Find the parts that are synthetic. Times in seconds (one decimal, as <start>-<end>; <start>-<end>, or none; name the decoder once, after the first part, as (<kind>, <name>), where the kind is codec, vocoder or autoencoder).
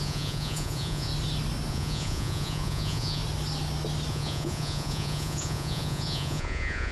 0.0-1.1 (vocoder, Vocos); 1.7-3.2; 4.1-6.9